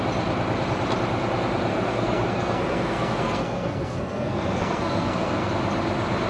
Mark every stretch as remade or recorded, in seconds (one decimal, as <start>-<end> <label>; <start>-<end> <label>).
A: 0.0-1.7 recorded; 1.7-5.5 remade; 5.5-6.3 recorded